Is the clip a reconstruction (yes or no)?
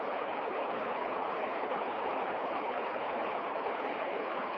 yes